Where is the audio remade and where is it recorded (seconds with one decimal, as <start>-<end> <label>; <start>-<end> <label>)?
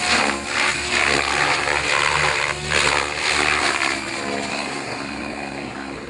0.0-4.5 recorded; 4.5-6.1 remade